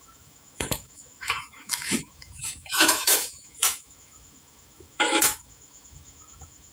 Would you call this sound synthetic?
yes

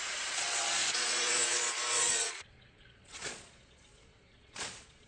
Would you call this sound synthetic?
yes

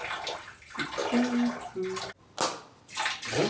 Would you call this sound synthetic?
no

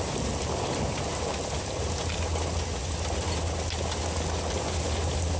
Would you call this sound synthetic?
no